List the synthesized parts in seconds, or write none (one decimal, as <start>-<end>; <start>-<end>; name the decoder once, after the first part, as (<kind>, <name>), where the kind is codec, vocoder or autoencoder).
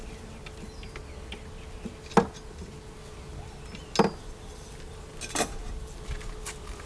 none